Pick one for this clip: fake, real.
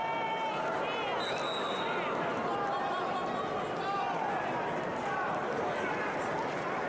real